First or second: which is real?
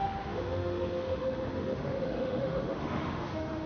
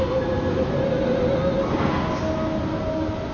second